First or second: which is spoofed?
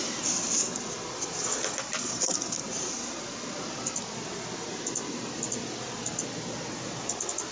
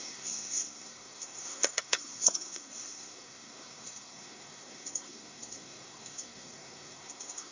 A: second